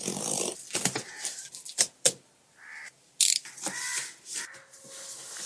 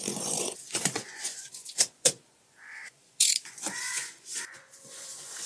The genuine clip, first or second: first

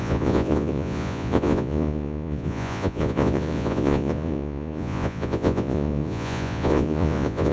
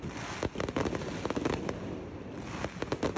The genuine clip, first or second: second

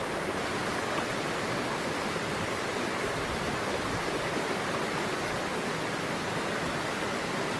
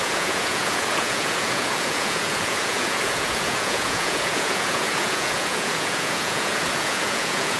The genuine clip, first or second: first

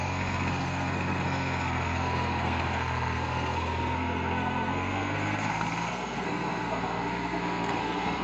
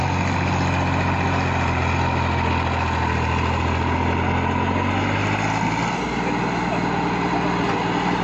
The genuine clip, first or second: second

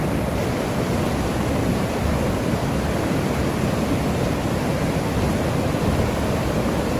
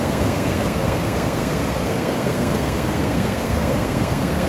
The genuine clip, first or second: first